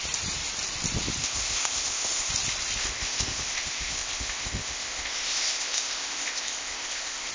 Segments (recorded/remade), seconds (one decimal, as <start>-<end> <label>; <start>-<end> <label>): 0.0-1.2 recorded; 1.2-2.3 remade; 2.3-2.8 recorded; 2.8-7.3 remade